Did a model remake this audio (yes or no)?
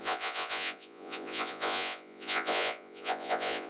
yes